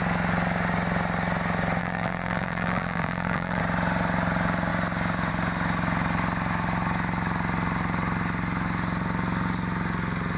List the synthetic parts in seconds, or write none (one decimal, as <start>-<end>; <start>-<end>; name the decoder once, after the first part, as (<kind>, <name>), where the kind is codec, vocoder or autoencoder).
1.8-3.6 (vocoder, BigVGAN v2)